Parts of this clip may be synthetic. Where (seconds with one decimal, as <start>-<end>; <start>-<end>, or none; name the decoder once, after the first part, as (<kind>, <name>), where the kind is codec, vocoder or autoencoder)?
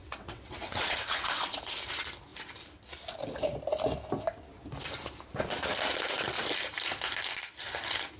0.0-1.6 (vocoder, WaveNeXt)